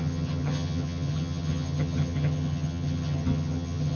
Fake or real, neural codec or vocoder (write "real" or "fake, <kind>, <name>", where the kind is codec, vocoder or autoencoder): fake, vocoder, HiFi-GAN